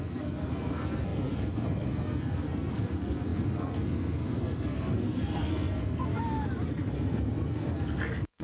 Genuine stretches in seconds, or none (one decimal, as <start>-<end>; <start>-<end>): 6.1-6.7